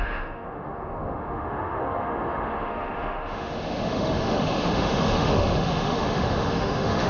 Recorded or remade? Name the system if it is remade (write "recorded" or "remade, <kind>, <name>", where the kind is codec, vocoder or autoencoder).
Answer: remade, autoencoder, DAC-VAE